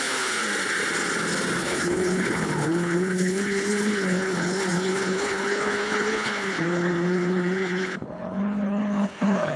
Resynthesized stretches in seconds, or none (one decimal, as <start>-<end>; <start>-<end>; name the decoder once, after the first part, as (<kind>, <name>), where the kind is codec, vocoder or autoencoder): 0.0-0.4 (codec, HILCodec); 1.6-9.6